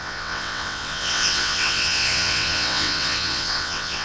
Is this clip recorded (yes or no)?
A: no